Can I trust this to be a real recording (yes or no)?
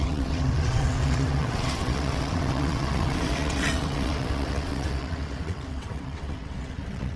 no